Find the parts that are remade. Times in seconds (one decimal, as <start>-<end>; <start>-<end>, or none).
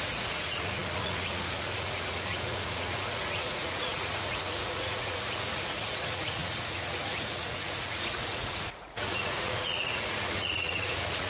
0.0-11.3